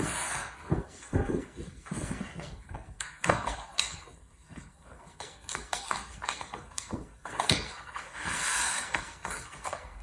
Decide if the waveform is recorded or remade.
remade